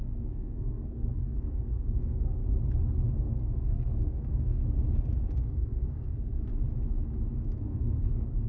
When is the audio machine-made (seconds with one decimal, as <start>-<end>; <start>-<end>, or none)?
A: 0.0-2.4; 3.2-4.6; 5.3-6.5; 7.6-8.5

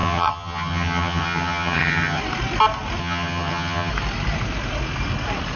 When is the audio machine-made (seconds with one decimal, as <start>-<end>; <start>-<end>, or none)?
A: 0.0-2.2; 3.0-3.9

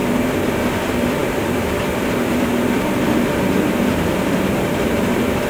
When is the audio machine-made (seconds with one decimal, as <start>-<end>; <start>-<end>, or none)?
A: 0.5-5.5

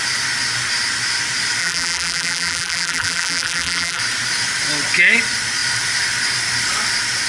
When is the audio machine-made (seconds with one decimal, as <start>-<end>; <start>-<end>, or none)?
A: 1.6-4.0

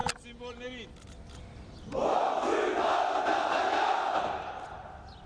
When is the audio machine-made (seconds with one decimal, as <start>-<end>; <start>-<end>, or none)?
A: none